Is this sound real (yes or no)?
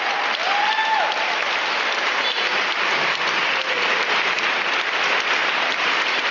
yes